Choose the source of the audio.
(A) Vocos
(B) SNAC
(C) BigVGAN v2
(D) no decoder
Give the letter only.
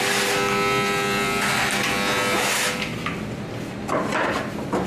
D